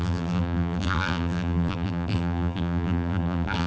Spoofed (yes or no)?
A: yes